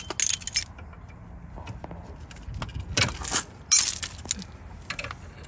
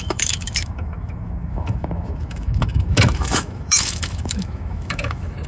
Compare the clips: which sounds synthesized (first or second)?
second